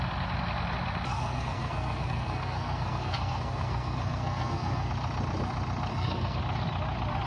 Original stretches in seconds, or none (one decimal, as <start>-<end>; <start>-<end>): 0.0-1.1; 4.9-5.9; 6.4-7.3